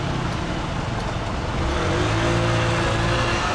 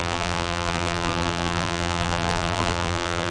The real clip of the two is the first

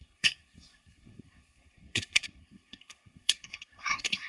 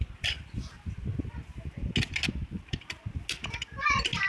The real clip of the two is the second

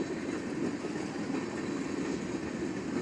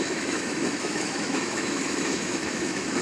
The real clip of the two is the first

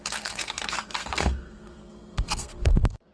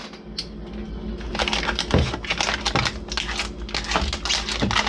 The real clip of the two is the second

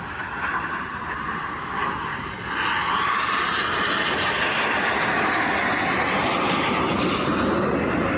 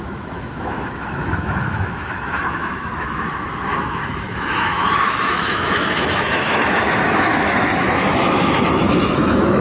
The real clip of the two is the first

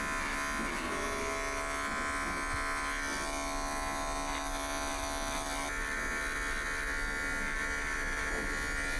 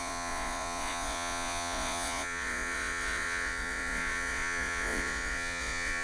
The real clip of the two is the first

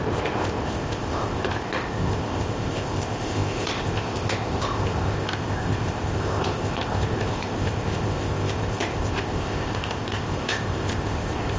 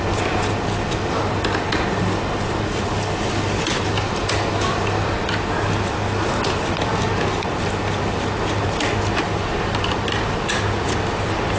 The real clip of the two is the second